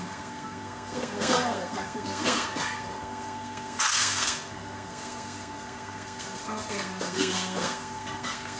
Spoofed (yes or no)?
yes